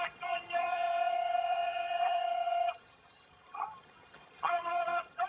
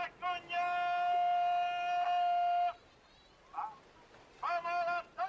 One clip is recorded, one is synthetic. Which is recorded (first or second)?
second